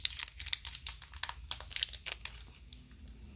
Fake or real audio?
real